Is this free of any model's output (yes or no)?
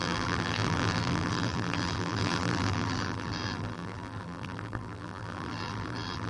no